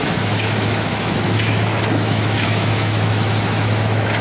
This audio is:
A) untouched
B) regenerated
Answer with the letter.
B